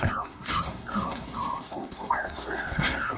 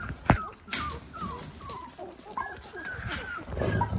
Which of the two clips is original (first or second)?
second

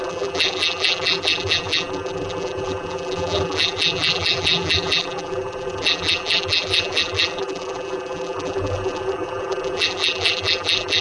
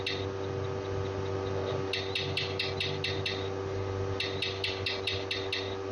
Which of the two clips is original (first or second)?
second